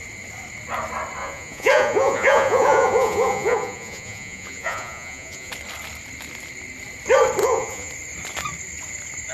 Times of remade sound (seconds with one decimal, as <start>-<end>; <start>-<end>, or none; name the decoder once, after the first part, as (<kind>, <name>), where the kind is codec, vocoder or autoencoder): 1.2-5.5 (vocoder, Vocos); 7.4-7.9